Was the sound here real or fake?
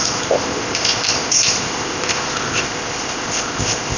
fake